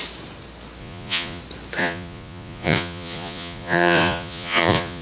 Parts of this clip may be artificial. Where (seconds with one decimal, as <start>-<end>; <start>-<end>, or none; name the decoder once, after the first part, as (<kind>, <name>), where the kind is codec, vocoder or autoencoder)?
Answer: 0.8-1.4 (vocoder, Vocos); 1.8-5.0